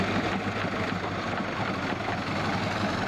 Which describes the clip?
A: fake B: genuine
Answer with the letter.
B